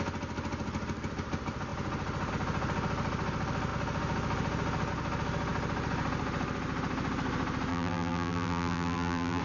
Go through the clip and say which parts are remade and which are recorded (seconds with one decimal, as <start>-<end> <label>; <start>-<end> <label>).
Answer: 0.0-7.7 recorded; 7.7-9.4 remade